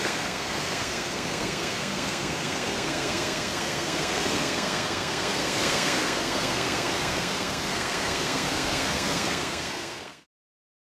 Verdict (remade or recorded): remade